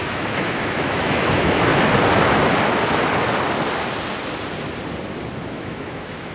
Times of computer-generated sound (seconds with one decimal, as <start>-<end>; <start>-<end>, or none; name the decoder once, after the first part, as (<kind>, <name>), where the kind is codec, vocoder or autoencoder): 0.0-1.7 (autoencoder, DAC-VAE); 5.5-6.3